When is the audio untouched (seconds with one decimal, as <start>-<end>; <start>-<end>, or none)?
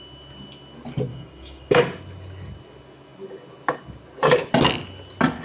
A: 0.0-1.1; 1.8-5.4